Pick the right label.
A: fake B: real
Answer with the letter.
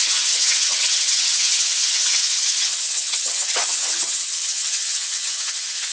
A